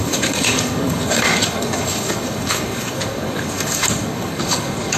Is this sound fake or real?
fake